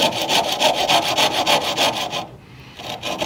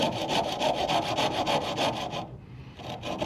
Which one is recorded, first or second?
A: first